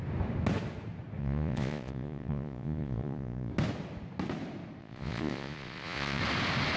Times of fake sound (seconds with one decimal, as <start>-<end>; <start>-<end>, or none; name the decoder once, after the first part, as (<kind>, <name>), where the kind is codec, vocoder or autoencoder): 1.2-3.5 (vocoder, Vocos); 4.8-6.2